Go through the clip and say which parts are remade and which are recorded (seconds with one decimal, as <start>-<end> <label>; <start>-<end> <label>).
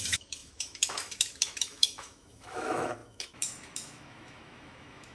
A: 0.0-5.1 remade